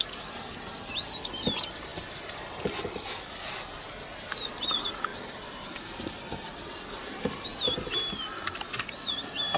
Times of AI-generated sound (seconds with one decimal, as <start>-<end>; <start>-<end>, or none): none